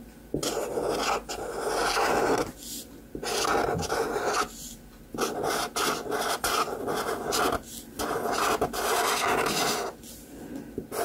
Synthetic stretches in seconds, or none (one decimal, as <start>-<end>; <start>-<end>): 1.8-2.4